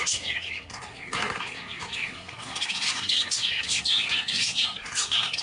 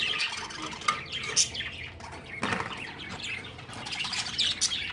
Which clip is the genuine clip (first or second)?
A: second